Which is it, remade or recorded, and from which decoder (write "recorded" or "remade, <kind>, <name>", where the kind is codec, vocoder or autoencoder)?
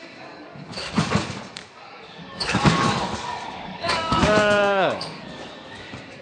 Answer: remade, codec, DAC